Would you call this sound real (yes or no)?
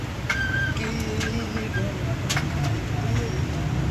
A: yes